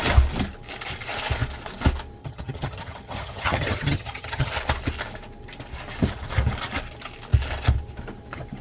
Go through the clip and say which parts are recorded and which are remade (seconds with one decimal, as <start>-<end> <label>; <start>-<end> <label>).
0.0-2.2 recorded; 2.2-4.5 remade; 4.5-8.6 recorded